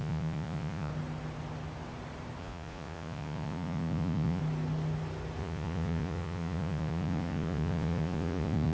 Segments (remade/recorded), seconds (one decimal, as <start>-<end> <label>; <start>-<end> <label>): 0.0-0.9 remade; 0.9-2.4 recorded; 2.4-4.4 remade; 4.4-5.4 recorded; 5.4-8.7 remade